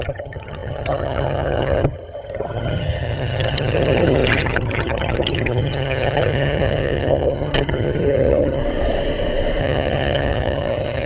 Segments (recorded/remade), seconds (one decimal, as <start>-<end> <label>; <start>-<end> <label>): 0.0-8.6 remade; 8.6-9.6 recorded; 9.6-11.1 remade